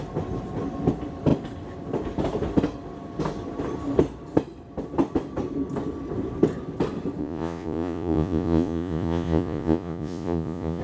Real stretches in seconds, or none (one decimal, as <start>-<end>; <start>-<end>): 0.0-7.2